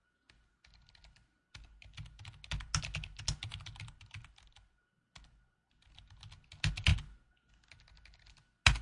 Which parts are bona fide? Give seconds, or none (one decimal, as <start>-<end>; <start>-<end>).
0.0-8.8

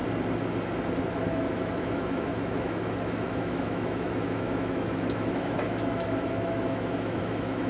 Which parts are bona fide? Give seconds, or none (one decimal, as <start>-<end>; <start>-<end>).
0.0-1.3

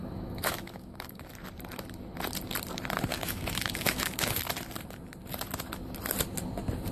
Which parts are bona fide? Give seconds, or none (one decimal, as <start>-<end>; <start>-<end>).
1.3-3.1; 4.4-6.9